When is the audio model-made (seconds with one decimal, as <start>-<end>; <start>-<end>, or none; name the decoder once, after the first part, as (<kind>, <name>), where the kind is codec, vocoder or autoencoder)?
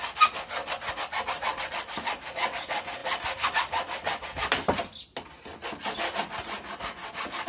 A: none